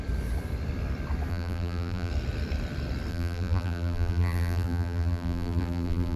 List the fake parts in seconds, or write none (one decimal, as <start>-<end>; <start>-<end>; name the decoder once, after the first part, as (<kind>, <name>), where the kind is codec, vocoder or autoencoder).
1.3-2.1 (vocoder, BigVGAN v2); 3.1-6.2